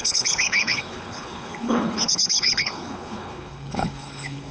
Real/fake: fake